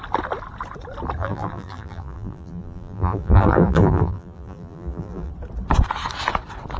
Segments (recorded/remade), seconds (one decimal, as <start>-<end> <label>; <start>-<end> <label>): 0.0-1.2 recorded; 1.2-5.3 remade; 5.3-6.8 recorded